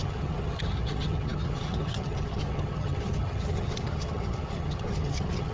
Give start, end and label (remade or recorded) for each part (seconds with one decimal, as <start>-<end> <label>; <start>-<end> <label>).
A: 0.0-5.5 remade